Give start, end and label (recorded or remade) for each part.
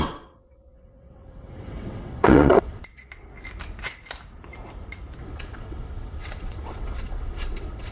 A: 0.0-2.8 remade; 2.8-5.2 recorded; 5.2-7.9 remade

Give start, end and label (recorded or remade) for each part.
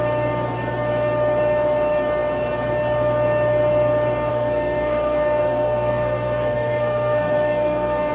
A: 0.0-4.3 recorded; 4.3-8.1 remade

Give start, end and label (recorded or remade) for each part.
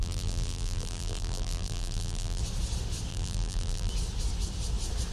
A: 0.0-2.4 remade; 2.4-3.1 recorded; 3.1-3.9 remade; 3.9-5.1 recorded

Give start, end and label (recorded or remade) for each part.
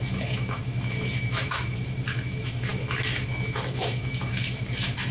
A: 0.0-5.1 remade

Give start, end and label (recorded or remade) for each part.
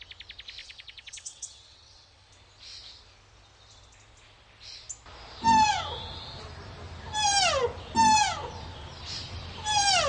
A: 0.0-0.6 recorded; 0.6-2.3 remade; 2.3-10.1 recorded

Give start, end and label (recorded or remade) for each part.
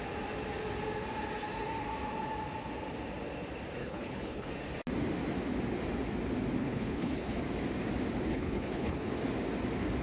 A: 0.0-3.8 recorded; 3.8-4.5 remade; 4.5-6.6 recorded; 6.6-7.4 remade; 7.4-8.3 recorded; 8.3-9.1 remade; 9.1-10.0 recorded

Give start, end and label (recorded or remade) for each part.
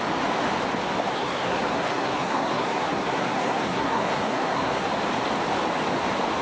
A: 0.0-1.1 recorded; 1.1-4.9 remade; 4.9-6.4 recorded